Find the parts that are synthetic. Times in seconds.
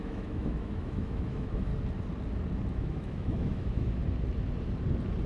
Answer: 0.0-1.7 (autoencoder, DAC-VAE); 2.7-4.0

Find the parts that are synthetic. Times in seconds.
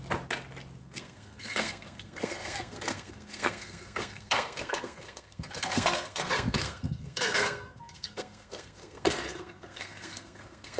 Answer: 0.8-10.8 (codec, SNAC)